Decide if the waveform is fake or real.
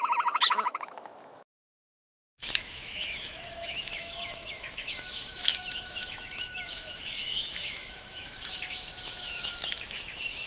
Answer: fake